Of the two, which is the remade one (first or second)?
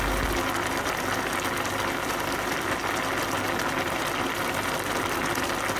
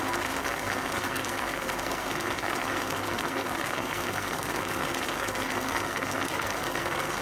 second